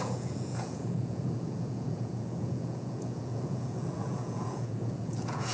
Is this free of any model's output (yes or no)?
no